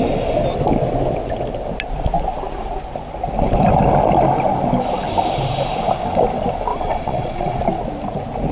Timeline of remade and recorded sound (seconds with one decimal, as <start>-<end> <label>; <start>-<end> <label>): 0.0-6.7 recorded; 6.7-7.6 remade; 7.6-8.5 recorded